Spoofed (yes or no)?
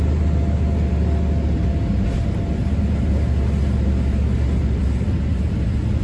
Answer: no